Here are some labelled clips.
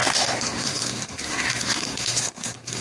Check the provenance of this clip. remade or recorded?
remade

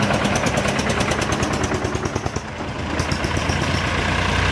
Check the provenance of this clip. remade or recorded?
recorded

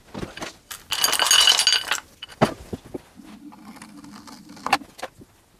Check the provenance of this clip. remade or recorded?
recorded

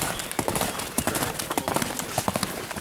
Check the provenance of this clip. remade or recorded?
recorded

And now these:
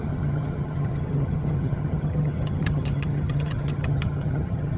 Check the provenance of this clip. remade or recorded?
remade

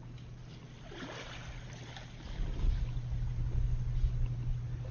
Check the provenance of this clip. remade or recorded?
recorded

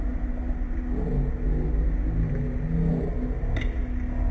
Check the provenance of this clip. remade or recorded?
recorded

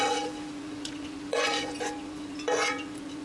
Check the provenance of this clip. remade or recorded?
remade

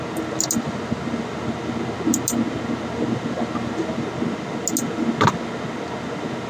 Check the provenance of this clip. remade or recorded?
recorded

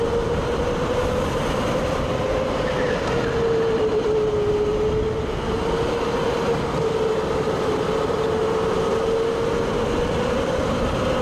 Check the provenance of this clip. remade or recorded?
recorded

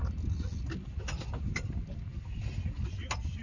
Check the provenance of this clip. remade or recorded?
recorded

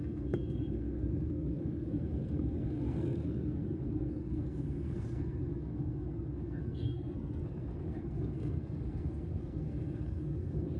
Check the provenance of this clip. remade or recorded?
remade